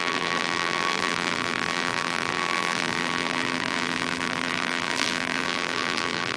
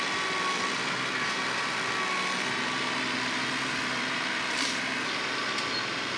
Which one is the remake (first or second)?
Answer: first